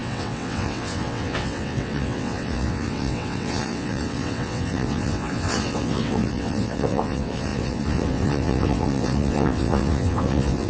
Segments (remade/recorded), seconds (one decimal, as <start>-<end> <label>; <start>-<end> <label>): 0.0-10.7 remade